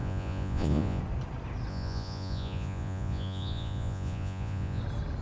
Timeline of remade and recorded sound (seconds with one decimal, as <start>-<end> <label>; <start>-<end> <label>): 0.0-1.0 remade; 1.0-1.7 recorded; 1.7-4.8 remade; 4.8-5.2 recorded